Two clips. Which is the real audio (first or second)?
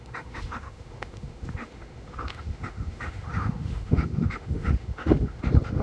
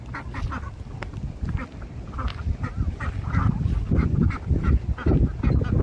second